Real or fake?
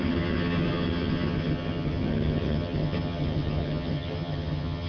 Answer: fake